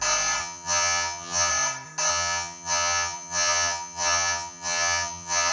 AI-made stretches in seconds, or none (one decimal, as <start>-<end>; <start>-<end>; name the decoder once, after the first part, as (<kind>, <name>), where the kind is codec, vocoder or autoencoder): 0.4-1.5 (vocoder, HiFi-GAN); 2.1-5.5